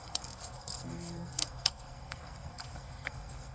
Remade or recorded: remade